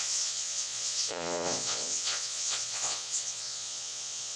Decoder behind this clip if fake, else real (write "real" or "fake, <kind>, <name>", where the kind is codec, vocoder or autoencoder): fake, vocoder, Vocos